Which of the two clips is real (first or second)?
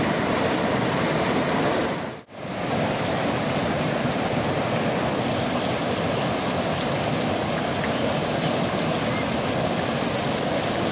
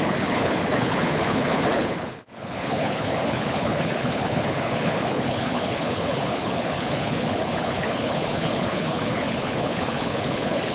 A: first